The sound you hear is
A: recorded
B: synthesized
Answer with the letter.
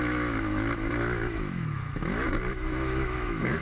B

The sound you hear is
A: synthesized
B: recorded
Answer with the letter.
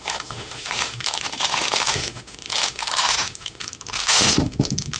A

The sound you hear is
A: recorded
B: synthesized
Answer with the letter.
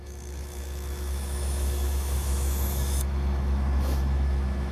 B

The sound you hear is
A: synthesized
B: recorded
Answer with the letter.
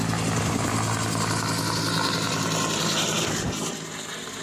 B